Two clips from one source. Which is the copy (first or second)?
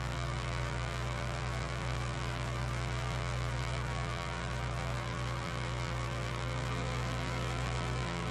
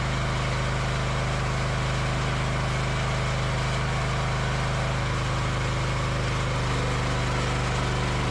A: first